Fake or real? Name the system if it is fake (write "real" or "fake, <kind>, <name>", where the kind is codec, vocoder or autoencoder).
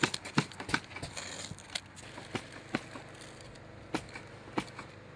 real